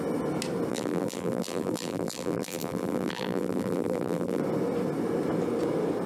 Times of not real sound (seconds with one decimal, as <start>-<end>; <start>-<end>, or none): 0.7-4.4